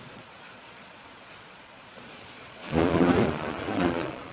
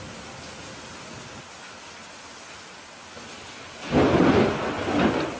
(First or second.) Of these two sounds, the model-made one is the first